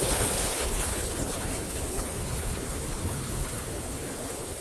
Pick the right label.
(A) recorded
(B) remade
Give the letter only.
B